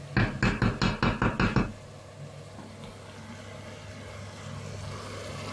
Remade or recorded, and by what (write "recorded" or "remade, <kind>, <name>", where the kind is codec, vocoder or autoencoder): recorded